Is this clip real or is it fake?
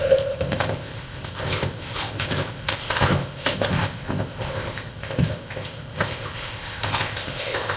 fake